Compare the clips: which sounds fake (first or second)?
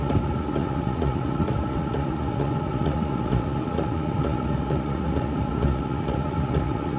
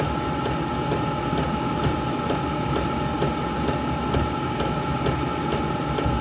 first